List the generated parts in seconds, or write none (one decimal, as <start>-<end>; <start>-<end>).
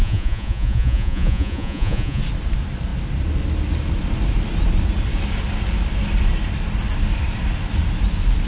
0.0-2.2